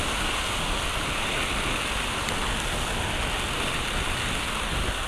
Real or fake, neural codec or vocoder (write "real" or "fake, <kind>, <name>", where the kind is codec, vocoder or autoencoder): real